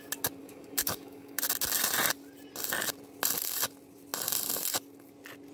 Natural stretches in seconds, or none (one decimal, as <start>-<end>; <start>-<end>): 0.0-0.4; 1.4-5.5